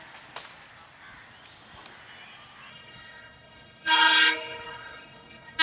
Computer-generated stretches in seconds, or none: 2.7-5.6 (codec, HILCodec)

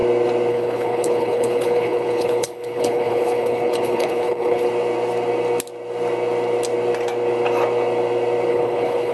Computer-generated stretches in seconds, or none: 0.5-4.7 (codec, HILCodec); 8.5-9.1

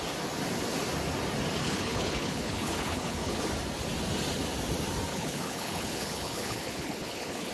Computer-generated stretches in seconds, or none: 1.6-3.4 (codec, HILCodec); 5.1-7.5

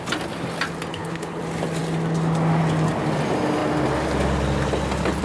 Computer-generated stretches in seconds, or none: 0.9-1.4 (codec, HILCodec)

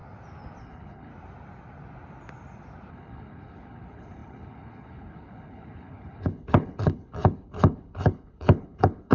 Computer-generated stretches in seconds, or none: 0.6-1.1 (codec, HILCodec); 2.9-9.1

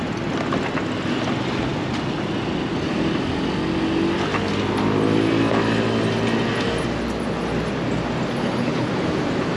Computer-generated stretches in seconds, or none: 8.4-8.9 (codec, HILCodec)

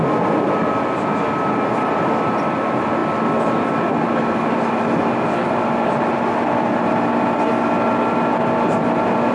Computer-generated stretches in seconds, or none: none